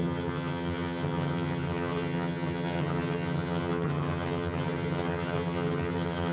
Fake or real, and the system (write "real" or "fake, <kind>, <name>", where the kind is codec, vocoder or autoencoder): fake, vocoder, HiFi-GAN